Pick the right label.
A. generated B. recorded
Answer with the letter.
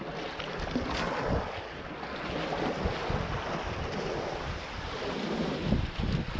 B